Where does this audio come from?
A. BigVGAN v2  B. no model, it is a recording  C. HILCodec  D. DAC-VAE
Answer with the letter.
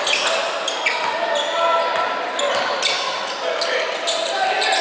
B